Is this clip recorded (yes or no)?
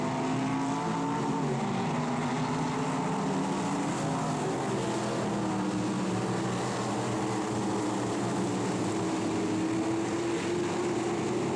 yes